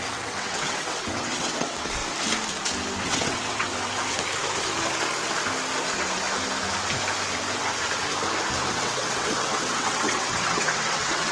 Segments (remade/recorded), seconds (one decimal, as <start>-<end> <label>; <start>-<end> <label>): 0.0-2.0 remade; 2.0-3.0 recorded; 3.0-3.7 remade; 3.7-8.7 recorded; 8.7-11.3 remade